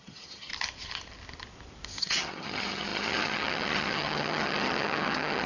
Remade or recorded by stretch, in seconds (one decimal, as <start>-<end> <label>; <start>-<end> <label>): 0.0-0.5 remade; 0.5-2.0 recorded; 2.0-5.5 remade